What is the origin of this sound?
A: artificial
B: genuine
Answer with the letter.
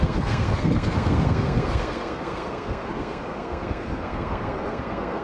A